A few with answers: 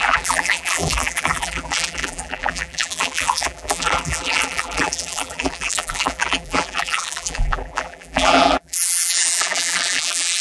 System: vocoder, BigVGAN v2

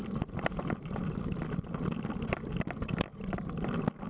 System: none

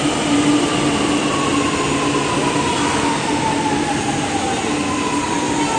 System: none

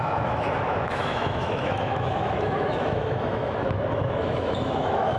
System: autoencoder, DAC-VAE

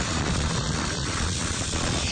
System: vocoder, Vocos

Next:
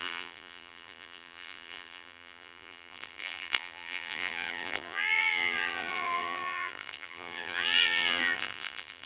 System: vocoder, BigVGAN v2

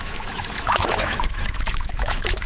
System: autoencoder, DAC-VAE